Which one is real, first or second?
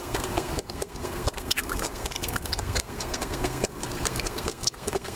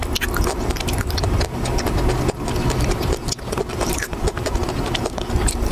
second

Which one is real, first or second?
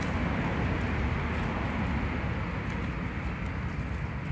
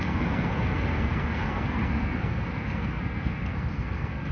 first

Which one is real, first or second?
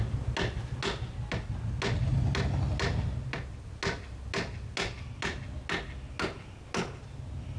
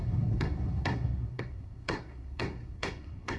first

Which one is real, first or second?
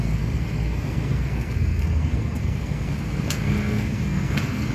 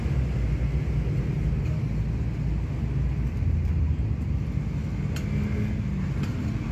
second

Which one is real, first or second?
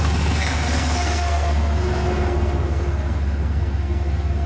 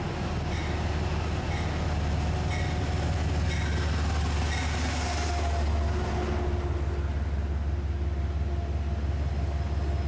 second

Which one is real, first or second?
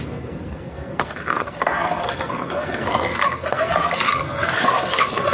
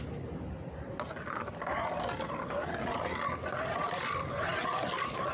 second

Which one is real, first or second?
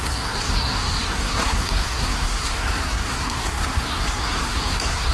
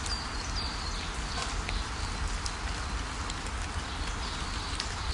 second